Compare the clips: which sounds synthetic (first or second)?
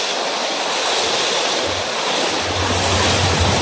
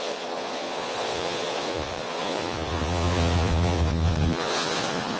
second